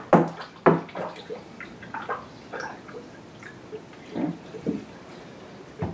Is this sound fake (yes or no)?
no